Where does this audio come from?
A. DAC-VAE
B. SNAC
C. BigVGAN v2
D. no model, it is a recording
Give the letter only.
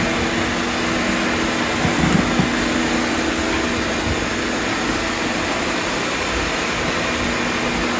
D